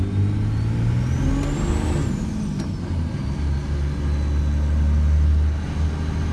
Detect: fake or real real